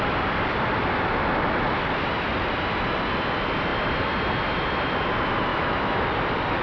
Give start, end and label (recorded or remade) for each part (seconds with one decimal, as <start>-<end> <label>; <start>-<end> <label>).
0.0-5.5 recorded; 5.5-6.1 remade; 6.1-6.6 recorded